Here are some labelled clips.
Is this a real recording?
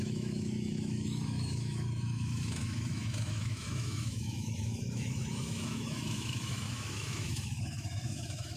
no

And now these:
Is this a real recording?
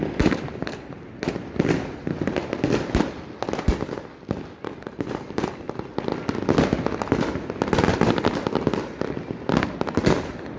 yes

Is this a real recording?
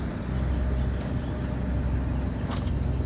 yes